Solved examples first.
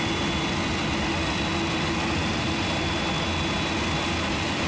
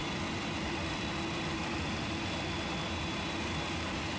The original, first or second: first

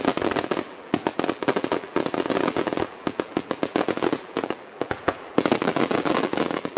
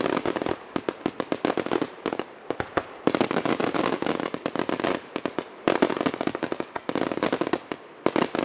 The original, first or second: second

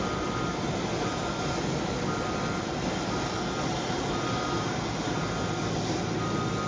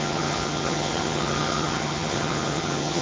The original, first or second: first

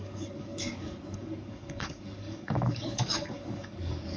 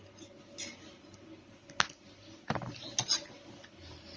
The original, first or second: second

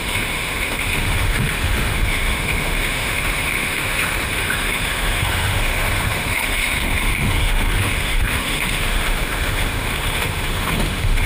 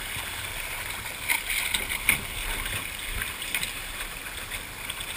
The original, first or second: second